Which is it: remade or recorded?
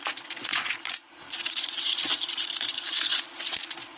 remade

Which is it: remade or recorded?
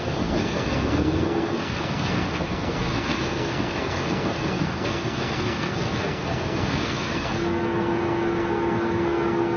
remade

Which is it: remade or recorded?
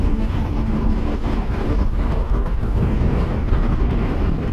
remade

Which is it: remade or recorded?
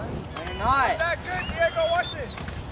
recorded